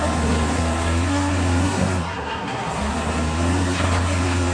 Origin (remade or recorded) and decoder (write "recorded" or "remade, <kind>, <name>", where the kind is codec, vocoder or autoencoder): remade, codec, SNAC